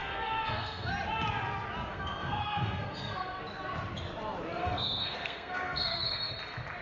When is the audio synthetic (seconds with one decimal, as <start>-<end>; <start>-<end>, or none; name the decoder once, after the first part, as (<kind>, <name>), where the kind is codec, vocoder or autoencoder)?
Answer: 0.0-0.9 (codec, SNAC); 1.9-3.4; 4.6-6.3